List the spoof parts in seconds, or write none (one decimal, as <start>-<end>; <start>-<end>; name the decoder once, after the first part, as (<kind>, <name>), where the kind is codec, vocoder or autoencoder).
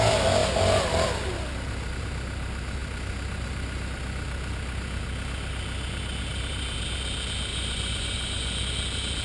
7.5-8.6 (vocoder, Vocos)